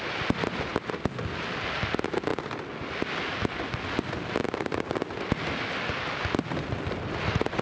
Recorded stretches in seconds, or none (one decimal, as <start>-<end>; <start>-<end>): 0.0-7.6